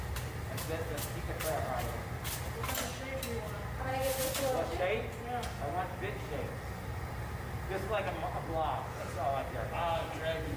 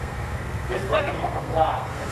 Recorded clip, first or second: first